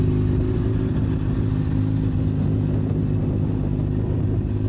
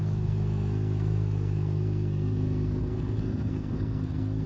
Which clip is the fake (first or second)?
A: second